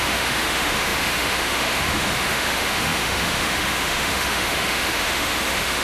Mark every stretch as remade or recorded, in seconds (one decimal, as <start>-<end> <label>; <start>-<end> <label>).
0.0-5.8 remade